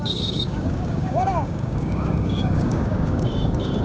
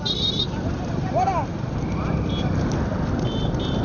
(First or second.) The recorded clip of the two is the second